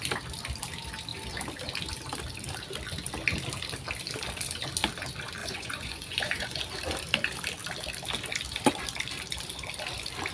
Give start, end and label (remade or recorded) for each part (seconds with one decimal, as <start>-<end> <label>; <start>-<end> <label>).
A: 0.0-5.4 recorded; 5.4-6.6 remade; 6.6-10.3 recorded